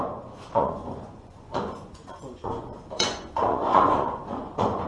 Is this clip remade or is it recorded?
remade